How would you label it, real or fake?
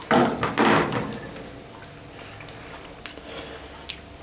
real